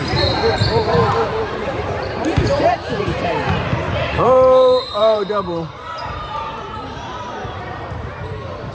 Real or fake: fake